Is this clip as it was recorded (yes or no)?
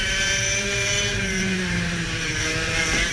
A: no